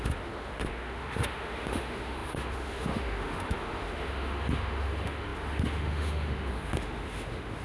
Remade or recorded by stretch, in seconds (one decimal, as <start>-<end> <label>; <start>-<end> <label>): 0.0-7.6 remade